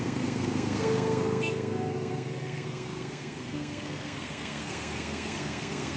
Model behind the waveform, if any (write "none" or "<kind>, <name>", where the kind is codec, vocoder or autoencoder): codec, SNAC